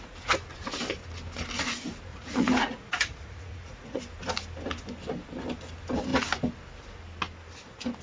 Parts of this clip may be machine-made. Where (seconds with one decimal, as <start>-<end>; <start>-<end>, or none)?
2.1-4.0